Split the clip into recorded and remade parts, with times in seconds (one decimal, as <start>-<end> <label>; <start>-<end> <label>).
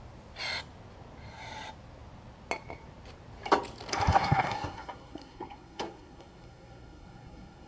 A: 0.0-4.1 recorded; 4.1-7.7 remade